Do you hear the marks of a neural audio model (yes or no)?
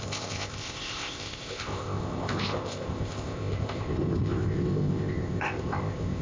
yes